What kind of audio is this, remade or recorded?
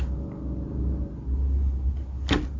recorded